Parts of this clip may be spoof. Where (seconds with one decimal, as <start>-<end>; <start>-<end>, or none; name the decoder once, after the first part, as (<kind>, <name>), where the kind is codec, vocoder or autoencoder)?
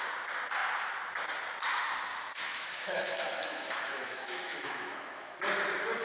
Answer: 2.1-5.4 (autoencoder, DAC-VAE)